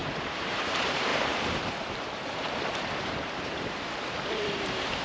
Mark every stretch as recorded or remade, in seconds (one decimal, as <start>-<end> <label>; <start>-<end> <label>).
0.0-5.0 remade